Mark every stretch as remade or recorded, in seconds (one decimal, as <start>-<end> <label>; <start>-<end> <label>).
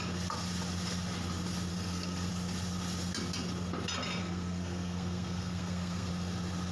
0.0-1.7 recorded; 1.7-2.3 remade; 2.3-4.2 recorded; 4.2-6.1 remade; 6.1-6.7 recorded